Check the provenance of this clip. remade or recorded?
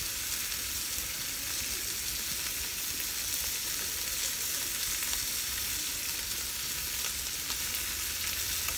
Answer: recorded